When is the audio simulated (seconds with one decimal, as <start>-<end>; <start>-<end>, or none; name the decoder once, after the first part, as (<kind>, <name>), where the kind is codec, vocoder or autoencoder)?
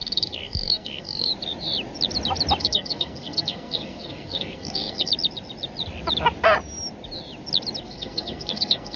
0.0-1.3 (codec, SNAC); 2.6-5.1; 7.8-9.0